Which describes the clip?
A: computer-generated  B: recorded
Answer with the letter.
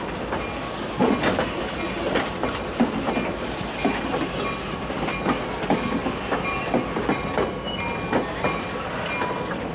B